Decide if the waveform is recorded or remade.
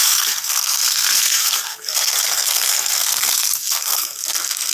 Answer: remade